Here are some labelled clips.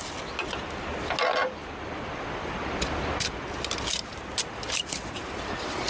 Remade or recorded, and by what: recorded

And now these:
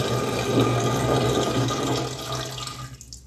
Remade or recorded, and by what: recorded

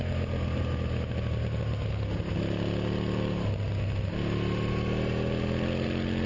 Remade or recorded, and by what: recorded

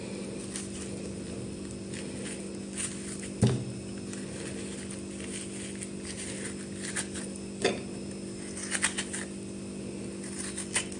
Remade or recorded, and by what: recorded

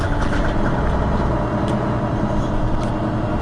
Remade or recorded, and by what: recorded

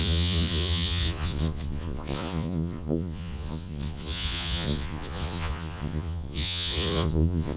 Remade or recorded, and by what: remade, vocoder, Vocos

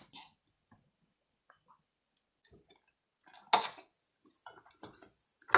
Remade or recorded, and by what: recorded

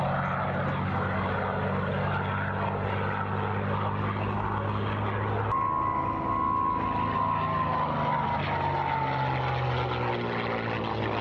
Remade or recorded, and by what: recorded